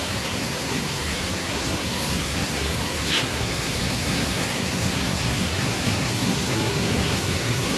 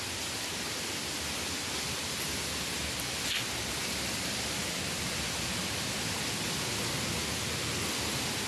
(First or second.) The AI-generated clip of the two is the first